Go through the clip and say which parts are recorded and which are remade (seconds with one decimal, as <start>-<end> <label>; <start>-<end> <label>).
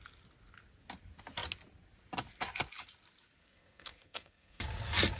0.0-3.4 recorded; 3.4-4.6 remade; 4.6-5.2 recorded